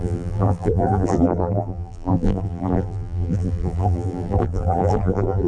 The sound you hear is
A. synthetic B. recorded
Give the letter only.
A